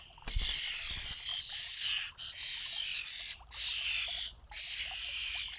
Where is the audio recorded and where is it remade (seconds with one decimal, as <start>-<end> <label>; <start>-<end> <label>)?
0.0-1.3 recorded; 1.3-2.2 remade; 2.2-5.6 recorded